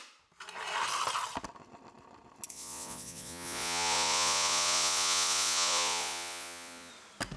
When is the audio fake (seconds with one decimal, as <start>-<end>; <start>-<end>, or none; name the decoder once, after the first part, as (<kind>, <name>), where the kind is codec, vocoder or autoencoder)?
2.5-6.9 (vocoder, Vocos)